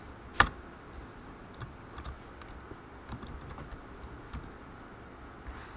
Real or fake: real